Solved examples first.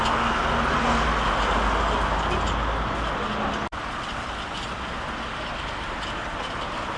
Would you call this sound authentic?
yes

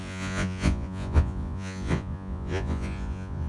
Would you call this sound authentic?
no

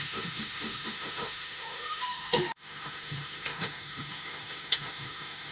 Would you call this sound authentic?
no